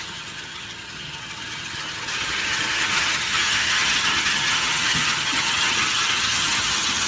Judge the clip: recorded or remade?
remade